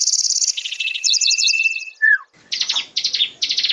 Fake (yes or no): yes